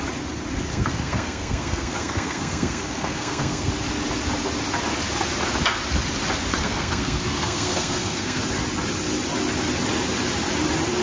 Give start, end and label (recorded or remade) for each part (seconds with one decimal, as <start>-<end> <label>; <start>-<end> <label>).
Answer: 0.0-0.7 recorded; 0.7-3.7 remade; 3.7-6.5 recorded; 6.5-8.4 remade; 8.4-11.0 recorded